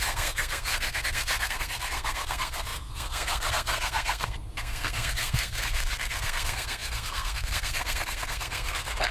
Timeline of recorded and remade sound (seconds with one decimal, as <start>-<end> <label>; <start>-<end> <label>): 0.0-9.1 remade